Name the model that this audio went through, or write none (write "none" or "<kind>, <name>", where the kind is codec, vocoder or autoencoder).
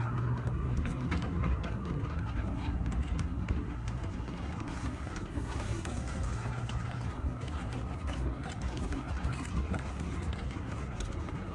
codec, SNAC